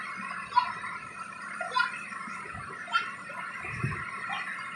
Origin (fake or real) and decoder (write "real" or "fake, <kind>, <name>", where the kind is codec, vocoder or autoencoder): real